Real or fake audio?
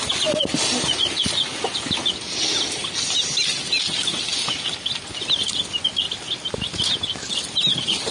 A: real